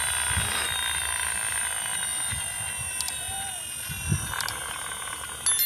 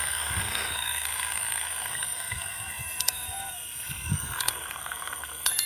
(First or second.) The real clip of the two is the first